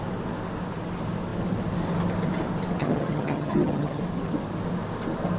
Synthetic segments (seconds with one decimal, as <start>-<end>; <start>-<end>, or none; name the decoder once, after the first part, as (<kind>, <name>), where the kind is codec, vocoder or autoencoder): 2.8-4.0 (vocoder, HiFi-GAN)